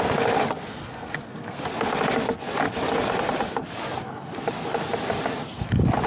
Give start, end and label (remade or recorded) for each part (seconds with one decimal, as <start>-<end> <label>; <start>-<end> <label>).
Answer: 0.0-0.7 recorded; 0.7-1.6 remade; 1.6-6.1 recorded